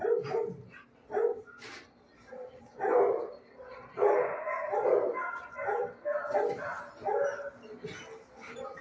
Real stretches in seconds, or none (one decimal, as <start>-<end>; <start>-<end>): 0.0-8.8